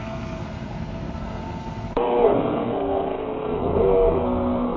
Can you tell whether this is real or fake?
fake